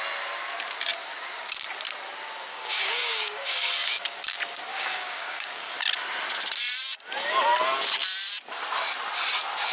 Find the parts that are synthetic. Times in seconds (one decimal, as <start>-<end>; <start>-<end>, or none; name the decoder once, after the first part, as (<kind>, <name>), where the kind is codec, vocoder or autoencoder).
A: 2.5-3.7 (codec, DAC); 4.7-5.7